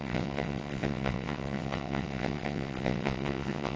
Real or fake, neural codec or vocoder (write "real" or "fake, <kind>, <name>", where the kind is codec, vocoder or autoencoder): fake, vocoder, WaveNeXt